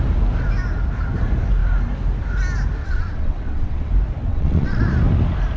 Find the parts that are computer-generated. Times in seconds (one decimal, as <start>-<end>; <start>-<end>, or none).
2.8-3.9; 4.3-4.8